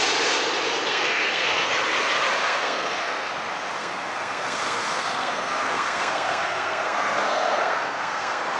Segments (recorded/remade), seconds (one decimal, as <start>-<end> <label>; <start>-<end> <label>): 0.0-0.9 recorded; 0.9-1.7 remade; 1.7-2.4 recorded; 2.4-3.3 remade; 3.3-3.8 recorded; 3.8-8.6 remade